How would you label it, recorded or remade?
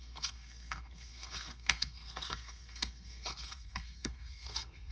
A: remade